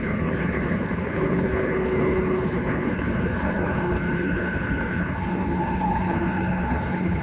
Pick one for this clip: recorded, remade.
remade